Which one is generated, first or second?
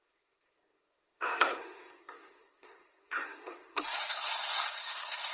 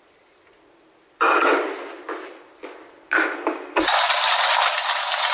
first